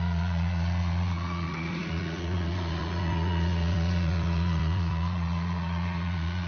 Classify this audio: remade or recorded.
remade